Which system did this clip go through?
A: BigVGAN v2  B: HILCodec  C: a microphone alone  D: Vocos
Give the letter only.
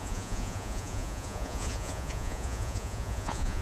D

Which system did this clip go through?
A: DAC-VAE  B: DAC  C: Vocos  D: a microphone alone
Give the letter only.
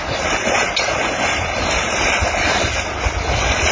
D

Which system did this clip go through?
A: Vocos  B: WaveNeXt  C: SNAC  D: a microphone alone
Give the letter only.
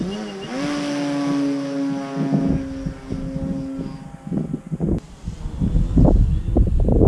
D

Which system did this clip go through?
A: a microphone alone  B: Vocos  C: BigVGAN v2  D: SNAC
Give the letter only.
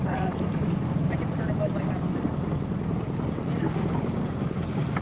A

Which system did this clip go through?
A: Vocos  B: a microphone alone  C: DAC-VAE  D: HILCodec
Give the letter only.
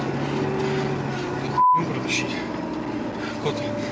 B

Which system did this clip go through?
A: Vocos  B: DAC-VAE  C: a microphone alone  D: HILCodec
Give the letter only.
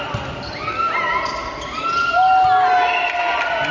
C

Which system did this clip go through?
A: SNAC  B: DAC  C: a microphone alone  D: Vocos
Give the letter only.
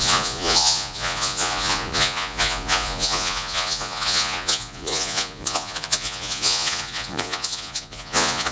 D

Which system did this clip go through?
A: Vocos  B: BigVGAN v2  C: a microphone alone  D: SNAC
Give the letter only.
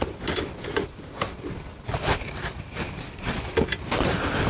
C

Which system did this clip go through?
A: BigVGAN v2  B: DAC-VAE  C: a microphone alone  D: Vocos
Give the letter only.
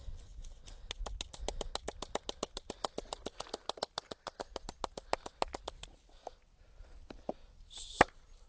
C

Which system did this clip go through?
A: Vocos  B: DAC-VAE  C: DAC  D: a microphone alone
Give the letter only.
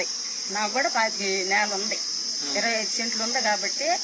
D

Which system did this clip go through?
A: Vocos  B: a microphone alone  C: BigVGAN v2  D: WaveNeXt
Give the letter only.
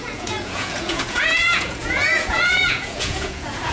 A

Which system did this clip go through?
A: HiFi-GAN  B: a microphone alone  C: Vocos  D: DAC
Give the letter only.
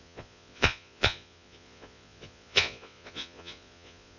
C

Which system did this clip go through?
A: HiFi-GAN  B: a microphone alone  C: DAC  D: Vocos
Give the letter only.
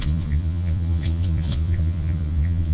D